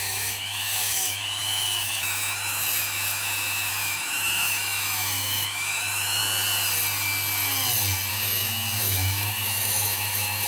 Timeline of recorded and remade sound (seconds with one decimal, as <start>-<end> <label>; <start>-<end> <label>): 0.0-6.2 remade; 6.2-8.1 recorded; 8.1-10.5 remade